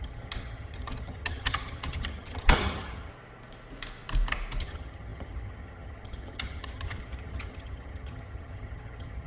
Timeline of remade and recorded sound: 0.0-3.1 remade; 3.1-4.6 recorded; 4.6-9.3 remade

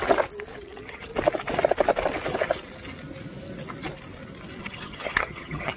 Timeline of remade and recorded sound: 0.0-0.6 recorded; 0.6-1.1 remade; 1.1-4.6 recorded; 4.6-5.8 remade